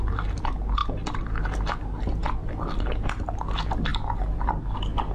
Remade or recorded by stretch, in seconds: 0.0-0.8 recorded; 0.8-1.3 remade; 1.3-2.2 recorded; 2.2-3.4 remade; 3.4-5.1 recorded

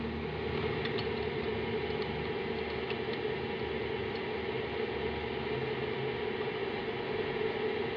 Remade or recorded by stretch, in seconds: 0.0-8.0 recorded

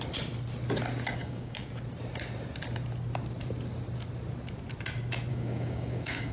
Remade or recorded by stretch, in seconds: 0.0-1.2 recorded; 1.2-1.7 remade; 1.7-5.3 recorded; 5.3-6.3 remade

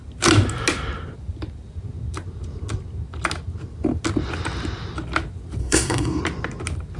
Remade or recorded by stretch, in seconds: 0.0-5.6 recorded; 5.6-6.2 remade; 6.2-7.0 recorded

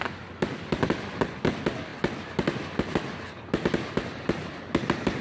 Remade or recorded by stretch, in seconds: 0.0-5.2 recorded

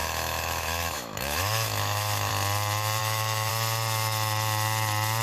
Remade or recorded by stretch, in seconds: 0.0-2.3 remade; 2.3-3.0 recorded; 3.0-3.5 remade; 3.5-5.2 recorded

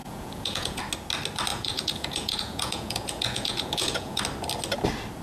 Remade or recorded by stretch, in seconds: 0.0-0.8 remade; 0.8-1.5 recorded; 1.5-4.2 remade; 4.2-5.2 recorded